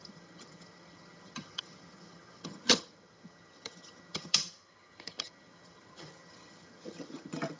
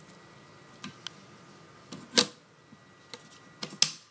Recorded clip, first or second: second